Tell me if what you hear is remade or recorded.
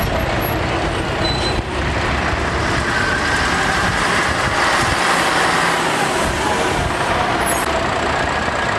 recorded